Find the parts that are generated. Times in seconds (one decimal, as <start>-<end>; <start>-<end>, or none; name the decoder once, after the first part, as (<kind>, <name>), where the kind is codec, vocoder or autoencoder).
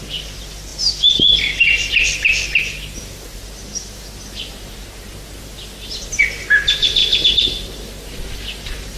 none